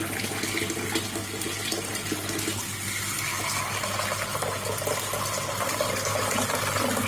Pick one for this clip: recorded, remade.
recorded